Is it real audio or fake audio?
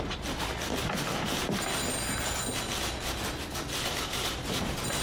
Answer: real